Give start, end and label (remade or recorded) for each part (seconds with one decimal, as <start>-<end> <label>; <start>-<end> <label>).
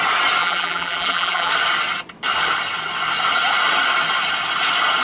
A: 0.0-0.4 recorded; 0.4-1.5 remade; 1.5-5.0 recorded